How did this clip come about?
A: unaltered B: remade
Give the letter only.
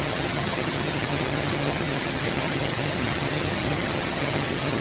B